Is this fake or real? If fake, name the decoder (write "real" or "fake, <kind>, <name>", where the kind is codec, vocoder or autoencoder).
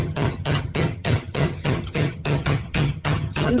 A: fake, vocoder, HiFi-GAN